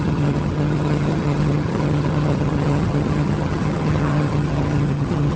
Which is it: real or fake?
fake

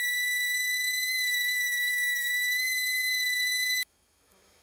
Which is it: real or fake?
fake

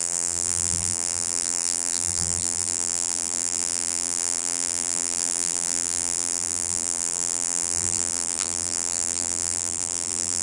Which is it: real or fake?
fake